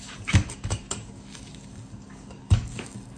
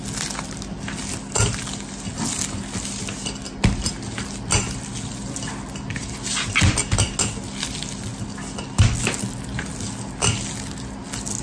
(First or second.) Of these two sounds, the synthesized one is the first